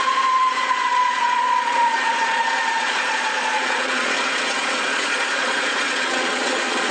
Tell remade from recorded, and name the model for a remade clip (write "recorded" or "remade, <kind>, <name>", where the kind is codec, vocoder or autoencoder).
remade, vocoder, Vocos